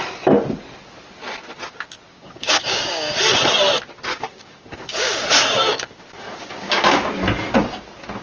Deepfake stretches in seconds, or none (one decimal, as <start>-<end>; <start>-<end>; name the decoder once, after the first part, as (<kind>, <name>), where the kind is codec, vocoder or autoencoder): 2.1-3.1 (codec, DAC); 4.1-5.3; 5.7-7.1